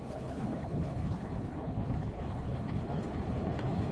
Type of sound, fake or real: fake